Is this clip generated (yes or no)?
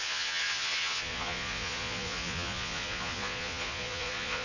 yes